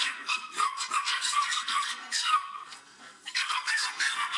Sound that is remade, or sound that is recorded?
remade